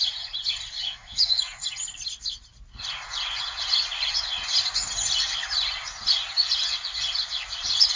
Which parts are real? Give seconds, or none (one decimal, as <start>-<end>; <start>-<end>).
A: 0.0-0.8; 1.6-8.0